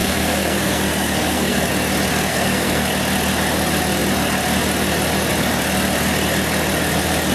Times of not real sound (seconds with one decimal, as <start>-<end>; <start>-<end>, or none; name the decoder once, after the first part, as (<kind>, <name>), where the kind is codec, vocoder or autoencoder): 0.0-1.7 (codec, SNAC); 2.1-2.9